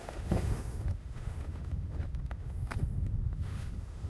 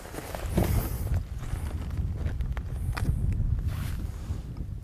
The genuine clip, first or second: second